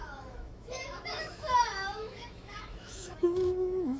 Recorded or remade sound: remade